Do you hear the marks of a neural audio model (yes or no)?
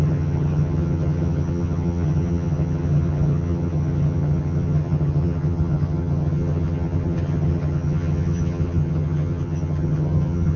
yes